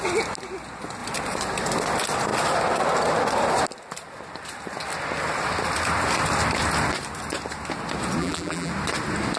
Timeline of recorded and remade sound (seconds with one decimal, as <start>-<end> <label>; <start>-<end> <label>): 0.0-8.2 recorded; 8.2-8.7 remade; 8.7-9.4 recorded